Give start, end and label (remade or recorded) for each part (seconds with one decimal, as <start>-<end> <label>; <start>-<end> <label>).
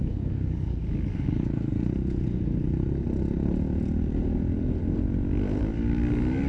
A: 0.0-1.7 remade; 1.7-5.6 recorded; 5.6-6.5 remade